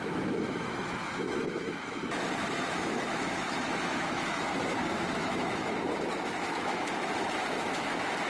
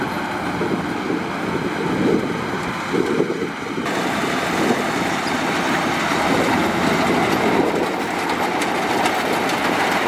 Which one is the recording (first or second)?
second